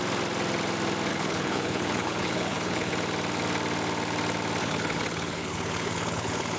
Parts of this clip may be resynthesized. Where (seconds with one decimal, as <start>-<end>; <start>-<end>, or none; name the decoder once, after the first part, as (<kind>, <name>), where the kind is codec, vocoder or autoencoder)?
1.1-2.9 (codec, HILCodec); 4.6-6.6

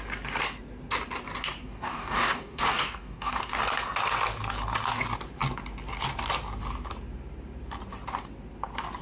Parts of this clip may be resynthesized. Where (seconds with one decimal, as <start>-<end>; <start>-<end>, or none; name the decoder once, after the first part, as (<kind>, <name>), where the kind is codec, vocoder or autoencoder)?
1.6-3.5 (codec, DAC)

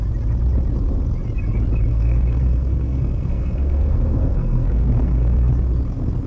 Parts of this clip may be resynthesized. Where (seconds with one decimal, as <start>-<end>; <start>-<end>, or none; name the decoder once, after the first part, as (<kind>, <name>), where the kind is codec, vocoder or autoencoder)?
1.9-5.5 (codec, SNAC)

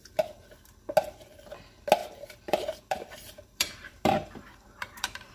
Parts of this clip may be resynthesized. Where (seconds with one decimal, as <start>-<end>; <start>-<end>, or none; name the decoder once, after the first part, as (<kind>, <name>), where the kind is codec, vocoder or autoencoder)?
2.0-5.3 (vocoder, BigVGAN v2)

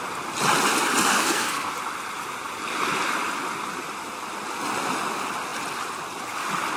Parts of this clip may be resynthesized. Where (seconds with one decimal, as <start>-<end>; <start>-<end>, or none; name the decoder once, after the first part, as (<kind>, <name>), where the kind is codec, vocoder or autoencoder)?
1.1-1.7 (codec, SNAC)

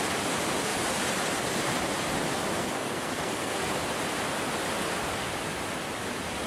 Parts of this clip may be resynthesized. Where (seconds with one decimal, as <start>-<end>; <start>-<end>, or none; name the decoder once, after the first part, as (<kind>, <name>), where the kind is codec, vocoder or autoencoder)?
2.5-3.7 (codec, SNAC)

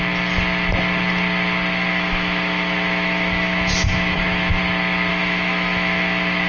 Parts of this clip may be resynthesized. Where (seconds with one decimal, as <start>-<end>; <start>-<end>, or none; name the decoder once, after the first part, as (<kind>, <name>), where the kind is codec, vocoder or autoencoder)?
1.9-4.6 (autoencoder, DAC-VAE); 5.1-6.5